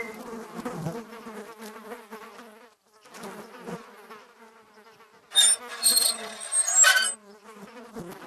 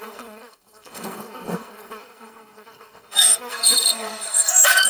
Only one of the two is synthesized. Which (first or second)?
second